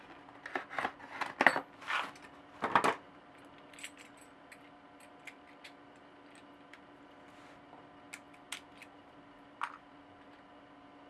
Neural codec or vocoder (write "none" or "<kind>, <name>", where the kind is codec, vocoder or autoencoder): none